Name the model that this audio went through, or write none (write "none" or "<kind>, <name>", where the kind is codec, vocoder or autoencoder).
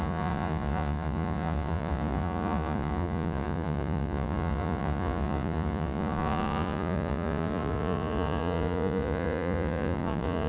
vocoder, Vocos